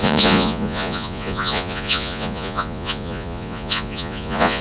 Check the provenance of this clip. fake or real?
fake